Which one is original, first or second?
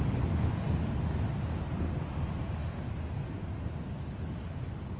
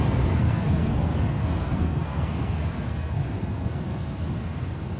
first